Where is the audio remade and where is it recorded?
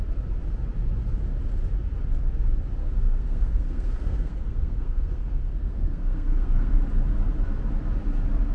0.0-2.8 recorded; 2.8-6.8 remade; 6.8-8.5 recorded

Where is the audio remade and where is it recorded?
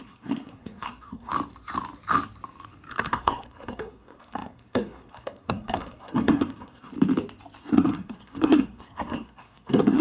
0.0-1.3 remade; 1.3-2.9 recorded; 2.9-6.9 remade; 6.9-7.6 recorded; 7.6-10.0 remade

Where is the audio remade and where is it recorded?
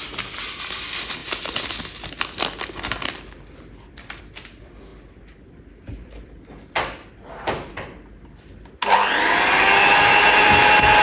0.0-11.0 recorded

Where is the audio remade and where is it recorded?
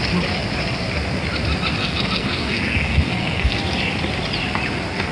0.0-1.8 recorded; 1.8-3.6 remade; 3.6-5.1 recorded